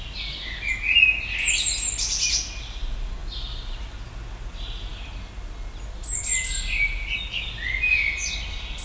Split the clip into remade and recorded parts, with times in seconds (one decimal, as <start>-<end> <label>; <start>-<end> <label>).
0.0-8.8 recorded